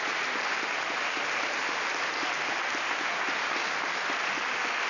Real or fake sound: real